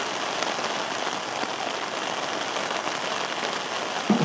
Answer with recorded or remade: recorded